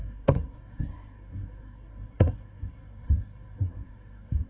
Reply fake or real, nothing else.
fake